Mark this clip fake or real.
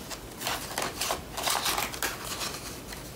real